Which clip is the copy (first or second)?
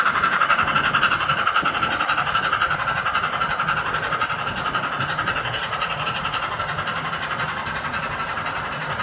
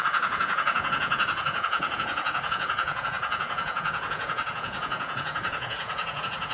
second